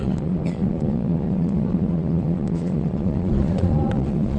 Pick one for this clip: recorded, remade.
remade